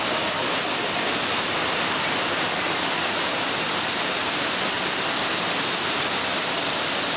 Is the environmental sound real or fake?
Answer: real